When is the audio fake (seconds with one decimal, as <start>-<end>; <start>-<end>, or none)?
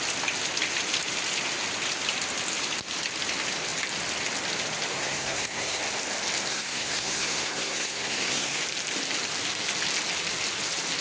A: 4.9-5.8; 6.5-8.6